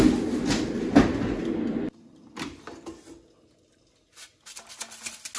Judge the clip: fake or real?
real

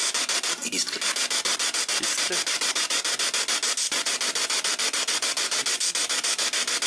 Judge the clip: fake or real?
real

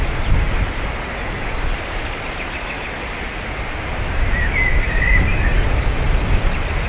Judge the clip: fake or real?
real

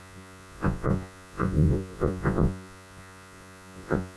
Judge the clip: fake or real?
fake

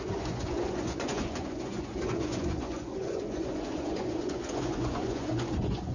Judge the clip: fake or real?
fake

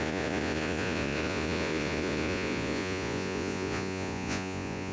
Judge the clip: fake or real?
fake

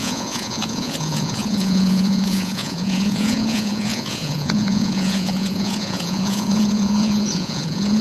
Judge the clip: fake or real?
fake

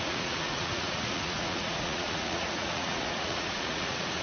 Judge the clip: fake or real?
fake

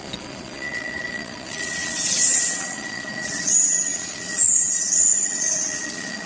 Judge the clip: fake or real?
fake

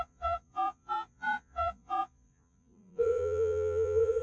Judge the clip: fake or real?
fake